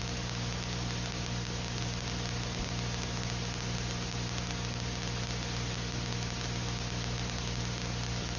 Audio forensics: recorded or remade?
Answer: recorded